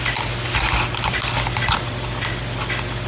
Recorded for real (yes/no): yes